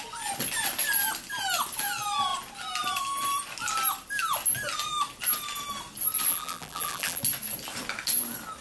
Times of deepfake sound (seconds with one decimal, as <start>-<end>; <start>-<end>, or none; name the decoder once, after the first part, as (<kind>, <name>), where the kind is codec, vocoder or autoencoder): 6.3-7.2 (vocoder, BigVGAN v2)